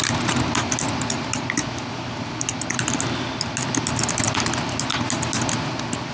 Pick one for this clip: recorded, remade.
recorded